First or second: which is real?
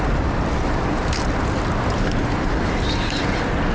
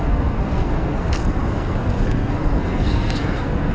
first